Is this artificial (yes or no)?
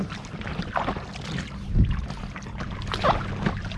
no